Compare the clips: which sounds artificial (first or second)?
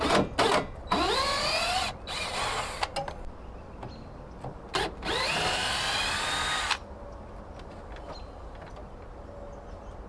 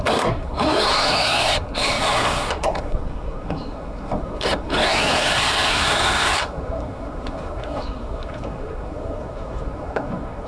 second